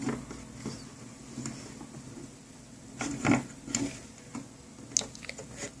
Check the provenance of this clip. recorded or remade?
recorded